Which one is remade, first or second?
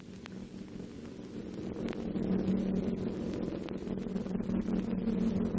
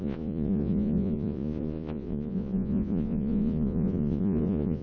second